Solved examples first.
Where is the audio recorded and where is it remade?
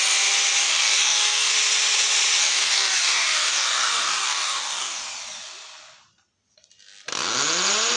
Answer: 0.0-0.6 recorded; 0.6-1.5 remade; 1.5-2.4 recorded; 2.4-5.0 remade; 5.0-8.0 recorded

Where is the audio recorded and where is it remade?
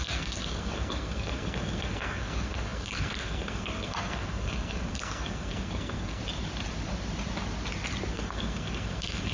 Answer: 0.0-6.2 remade; 6.2-8.1 recorded; 8.1-9.3 remade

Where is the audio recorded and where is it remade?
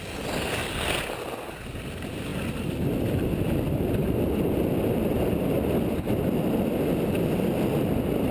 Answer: 0.0-0.6 recorded; 0.6-1.5 remade; 1.5-2.3 recorded; 2.3-6.0 remade; 6.0-8.3 recorded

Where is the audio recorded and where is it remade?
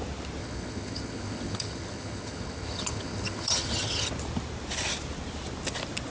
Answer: 0.0-0.4 recorded; 0.4-4.1 remade; 4.1-6.1 recorded